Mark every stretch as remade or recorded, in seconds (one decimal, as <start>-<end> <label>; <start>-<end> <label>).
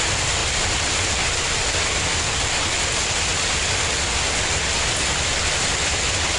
0.0-0.4 recorded; 0.4-0.9 remade; 0.9-6.4 recorded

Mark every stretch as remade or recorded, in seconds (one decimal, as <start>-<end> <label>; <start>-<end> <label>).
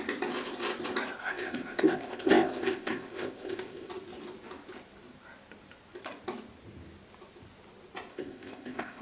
0.0-1.2 recorded; 1.2-3.9 remade; 3.9-8.1 recorded; 8.1-9.0 remade